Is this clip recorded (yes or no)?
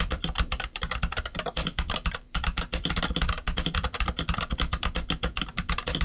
no